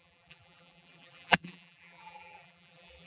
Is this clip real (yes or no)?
no